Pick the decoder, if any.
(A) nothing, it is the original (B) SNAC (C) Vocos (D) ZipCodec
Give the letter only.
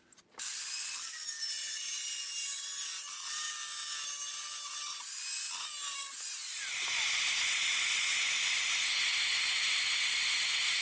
A